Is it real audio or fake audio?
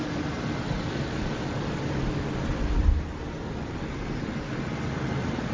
real